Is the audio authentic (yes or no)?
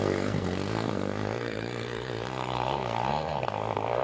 no